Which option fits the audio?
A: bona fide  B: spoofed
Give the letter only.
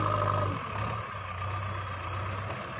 A